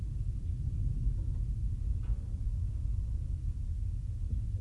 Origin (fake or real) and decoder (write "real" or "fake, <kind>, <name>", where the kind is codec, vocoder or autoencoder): real